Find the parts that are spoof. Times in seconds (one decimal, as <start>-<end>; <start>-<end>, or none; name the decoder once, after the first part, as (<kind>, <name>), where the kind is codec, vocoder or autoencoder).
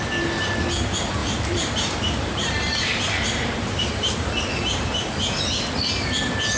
1.2-5.2 (vocoder, BigVGAN v2)